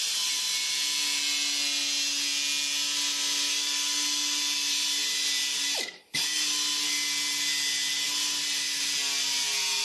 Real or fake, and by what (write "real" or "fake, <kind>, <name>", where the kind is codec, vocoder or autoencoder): real